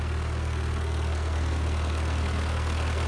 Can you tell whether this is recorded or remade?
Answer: remade